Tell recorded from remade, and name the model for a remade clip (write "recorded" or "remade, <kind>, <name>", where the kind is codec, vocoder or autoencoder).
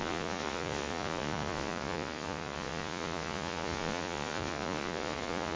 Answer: remade, vocoder, Vocos